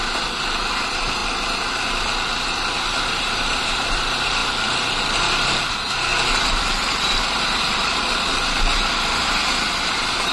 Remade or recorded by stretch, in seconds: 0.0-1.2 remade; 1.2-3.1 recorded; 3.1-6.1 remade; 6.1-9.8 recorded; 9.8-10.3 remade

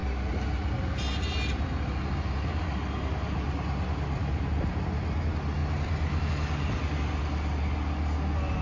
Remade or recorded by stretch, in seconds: 0.0-5.6 recorded; 5.6-6.3 remade; 6.3-8.6 recorded

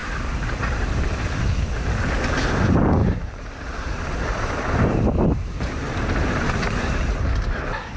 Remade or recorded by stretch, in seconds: 0.0-1.0 remade; 1.0-3.0 recorded; 3.0-7.0 remade; 7.0-8.0 recorded